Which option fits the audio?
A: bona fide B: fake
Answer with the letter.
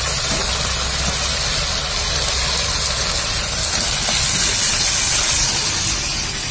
A